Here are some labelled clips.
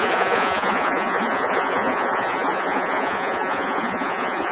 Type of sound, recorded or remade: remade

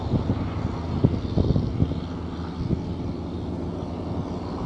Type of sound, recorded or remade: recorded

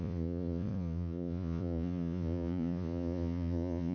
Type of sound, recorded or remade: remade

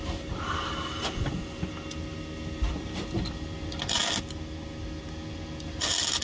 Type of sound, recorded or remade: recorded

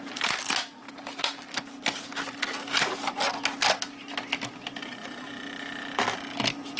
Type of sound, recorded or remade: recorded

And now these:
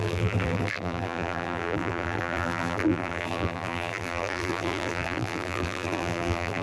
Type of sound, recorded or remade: remade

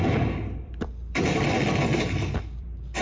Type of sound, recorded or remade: remade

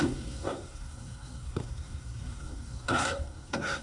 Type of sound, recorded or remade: remade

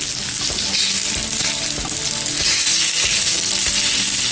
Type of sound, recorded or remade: recorded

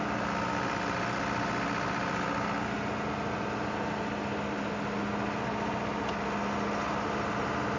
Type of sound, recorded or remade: recorded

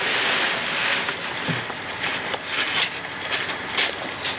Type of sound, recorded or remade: recorded